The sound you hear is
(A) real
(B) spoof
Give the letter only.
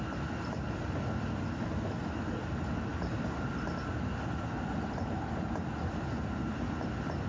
A